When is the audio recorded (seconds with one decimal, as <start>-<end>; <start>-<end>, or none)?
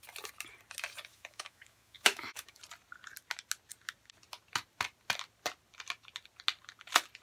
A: 0.0-1.1; 2.6-7.2